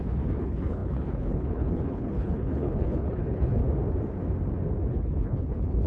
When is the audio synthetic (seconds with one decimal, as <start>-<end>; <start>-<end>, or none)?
0.0-3.6; 4.9-5.9